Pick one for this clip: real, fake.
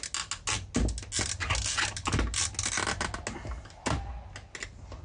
real